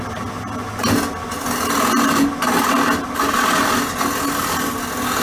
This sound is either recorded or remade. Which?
recorded